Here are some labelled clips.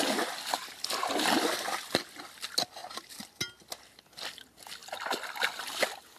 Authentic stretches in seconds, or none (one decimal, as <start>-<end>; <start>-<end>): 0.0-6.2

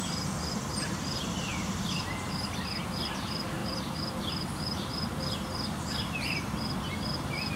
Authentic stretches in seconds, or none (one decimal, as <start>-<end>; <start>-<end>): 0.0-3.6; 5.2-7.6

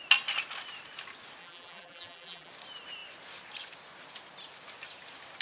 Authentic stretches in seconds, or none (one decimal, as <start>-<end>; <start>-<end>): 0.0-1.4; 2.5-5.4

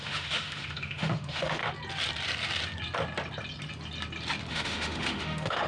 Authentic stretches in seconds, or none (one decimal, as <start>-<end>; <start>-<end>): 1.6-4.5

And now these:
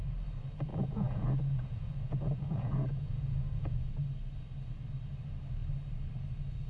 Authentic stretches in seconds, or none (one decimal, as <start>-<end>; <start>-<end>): 0.0-0.7; 3.9-6.7